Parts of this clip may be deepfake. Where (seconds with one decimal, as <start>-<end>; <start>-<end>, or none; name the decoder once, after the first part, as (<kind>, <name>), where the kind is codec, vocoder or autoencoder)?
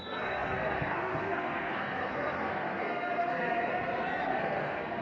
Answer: 0.0-3.7 (codec, SNAC); 4.3-5.0